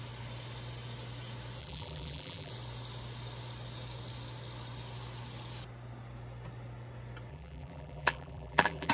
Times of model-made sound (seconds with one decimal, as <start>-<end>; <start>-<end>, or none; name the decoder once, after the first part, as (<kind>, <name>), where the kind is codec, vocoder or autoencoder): 1.6-2.5 (vocoder, BigVGAN v2); 7.3-8.9